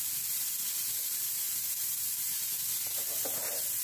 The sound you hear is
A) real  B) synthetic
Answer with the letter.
A